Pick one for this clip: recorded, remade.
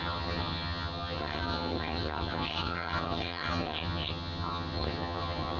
remade